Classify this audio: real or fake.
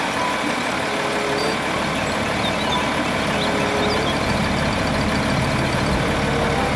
real